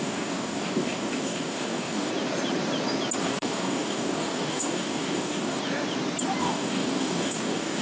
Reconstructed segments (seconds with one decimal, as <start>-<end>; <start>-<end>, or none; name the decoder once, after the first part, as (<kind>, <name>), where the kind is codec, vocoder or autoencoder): 0.0-2.1 (codec, DAC); 3.2-5.6; 6.4-7.8